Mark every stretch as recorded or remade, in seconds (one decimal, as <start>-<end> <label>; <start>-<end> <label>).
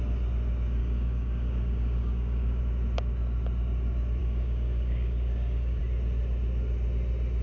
0.0-0.8 recorded; 0.8-2.6 remade; 2.6-4.2 recorded; 4.2-5.8 remade; 5.8-7.4 recorded